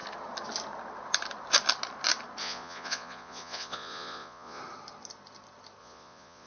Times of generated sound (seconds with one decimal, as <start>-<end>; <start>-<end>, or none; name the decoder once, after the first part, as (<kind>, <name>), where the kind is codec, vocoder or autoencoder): 2.4-4.6 (vocoder, Vocos); 5.8-6.5